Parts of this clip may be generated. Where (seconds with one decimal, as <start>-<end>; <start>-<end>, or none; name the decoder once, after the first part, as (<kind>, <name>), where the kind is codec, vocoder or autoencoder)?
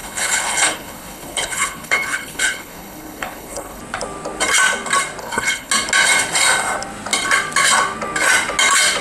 0.0-3.8 (codec, HILCodec); 5.2-5.7